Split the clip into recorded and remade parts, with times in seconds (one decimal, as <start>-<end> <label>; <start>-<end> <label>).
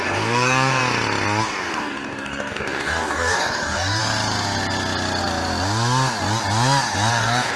0.0-0.8 remade; 0.8-1.4 recorded; 1.4-4.0 remade; 4.0-7.1 recorded; 7.1-7.6 remade